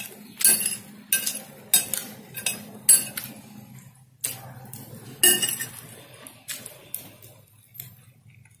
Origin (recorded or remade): recorded